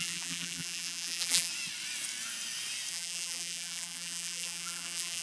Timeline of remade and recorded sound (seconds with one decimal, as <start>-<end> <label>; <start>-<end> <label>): 0.0-1.5 remade; 1.5-2.9 recorded; 2.9-5.2 remade